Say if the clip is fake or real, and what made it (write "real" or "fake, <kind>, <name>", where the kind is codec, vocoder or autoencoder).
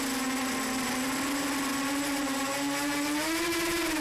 real